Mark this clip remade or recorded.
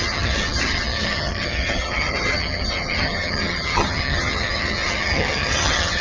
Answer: remade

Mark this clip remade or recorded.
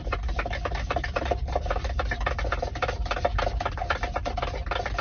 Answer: recorded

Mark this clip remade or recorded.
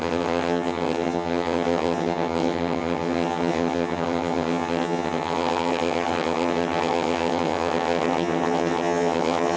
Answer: remade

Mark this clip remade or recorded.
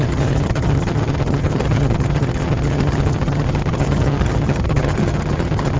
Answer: remade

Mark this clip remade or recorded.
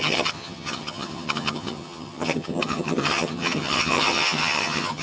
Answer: remade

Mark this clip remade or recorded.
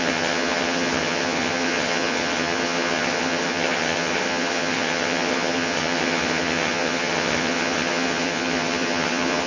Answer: remade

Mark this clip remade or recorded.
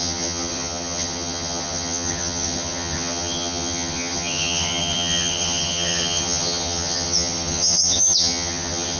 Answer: remade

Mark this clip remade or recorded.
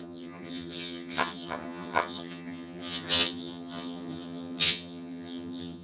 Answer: remade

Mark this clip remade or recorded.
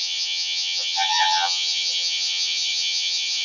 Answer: remade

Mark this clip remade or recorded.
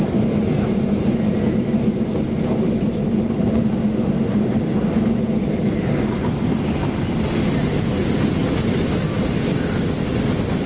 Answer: recorded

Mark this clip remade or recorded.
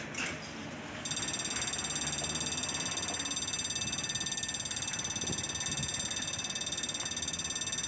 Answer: recorded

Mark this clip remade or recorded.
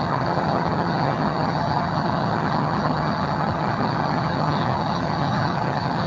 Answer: remade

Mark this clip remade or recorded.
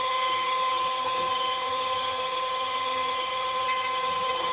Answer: remade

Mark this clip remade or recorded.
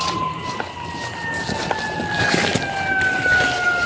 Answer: recorded